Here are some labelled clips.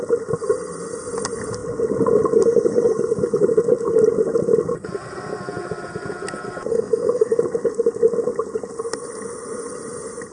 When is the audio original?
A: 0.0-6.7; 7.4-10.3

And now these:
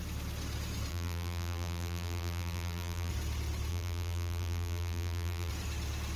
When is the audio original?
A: 0.0-0.9; 3.1-3.7; 5.5-6.2

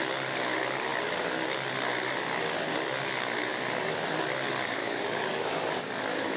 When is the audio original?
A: 0.0-4.8; 5.8-6.4

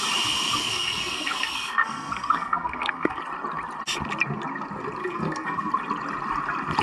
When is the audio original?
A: 0.0-0.6; 3.2-5.0; 5.7-6.8

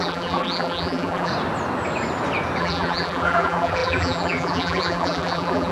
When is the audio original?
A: 1.3-2.6